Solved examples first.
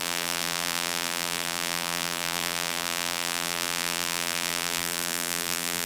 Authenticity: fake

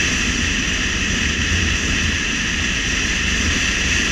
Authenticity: fake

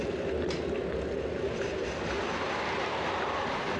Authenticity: real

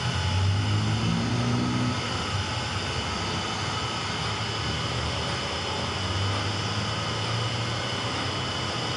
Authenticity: real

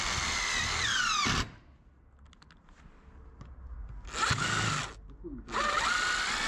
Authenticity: real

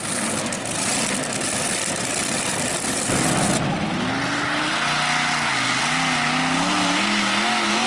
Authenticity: real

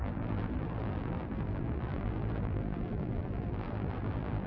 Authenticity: fake